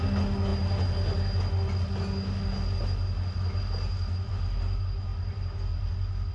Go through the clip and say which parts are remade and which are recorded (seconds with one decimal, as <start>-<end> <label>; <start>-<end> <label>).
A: 0.0-6.3 recorded